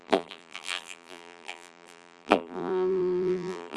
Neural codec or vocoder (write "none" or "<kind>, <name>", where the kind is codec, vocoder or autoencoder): vocoder, BigVGAN v2